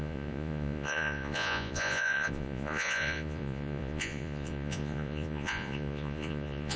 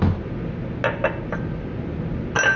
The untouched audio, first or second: second